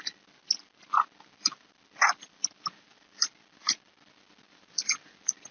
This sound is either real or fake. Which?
real